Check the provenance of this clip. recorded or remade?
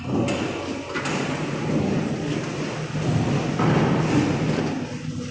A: recorded